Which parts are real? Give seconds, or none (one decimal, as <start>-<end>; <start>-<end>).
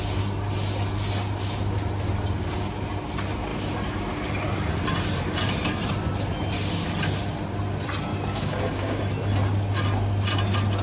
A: 0.0-8.1; 9.0-10.8